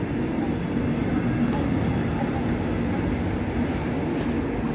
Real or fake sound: real